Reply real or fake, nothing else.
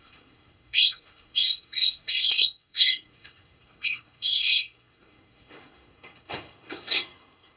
fake